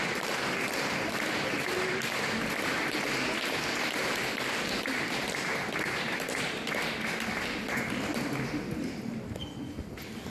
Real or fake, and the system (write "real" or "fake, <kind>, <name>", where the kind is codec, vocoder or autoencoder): real